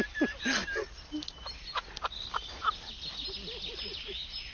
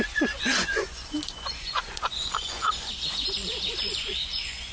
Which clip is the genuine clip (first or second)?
first